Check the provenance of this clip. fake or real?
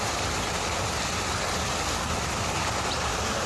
real